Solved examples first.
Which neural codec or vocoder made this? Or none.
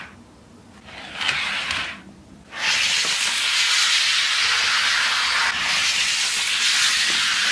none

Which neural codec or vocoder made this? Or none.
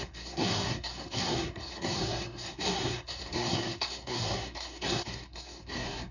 codec, SNAC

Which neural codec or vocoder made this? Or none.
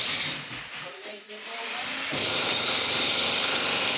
vocoder, BigVGAN v2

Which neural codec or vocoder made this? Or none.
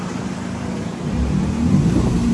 vocoder, BigVGAN v2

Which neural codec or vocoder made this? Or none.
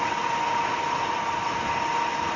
none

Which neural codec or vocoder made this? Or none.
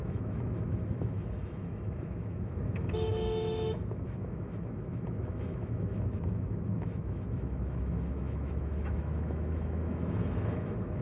autoencoder, DAC-VAE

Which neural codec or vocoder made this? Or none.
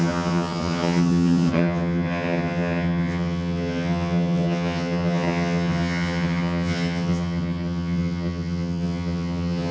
vocoder, HiFi-GAN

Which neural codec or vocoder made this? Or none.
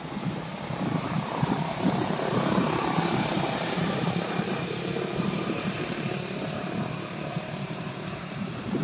vocoder, BigVGAN v2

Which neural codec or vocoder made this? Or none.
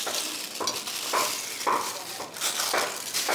none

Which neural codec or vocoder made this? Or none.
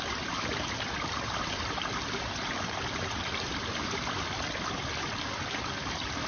none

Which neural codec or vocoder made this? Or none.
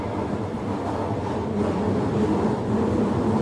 none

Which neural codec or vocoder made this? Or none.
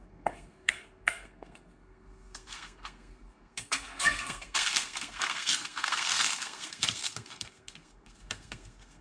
codec, SNAC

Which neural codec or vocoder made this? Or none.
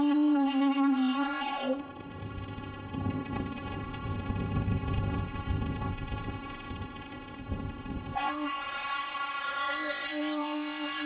codec, ZipCodec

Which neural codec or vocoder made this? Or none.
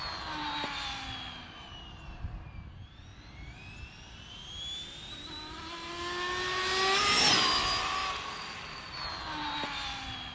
none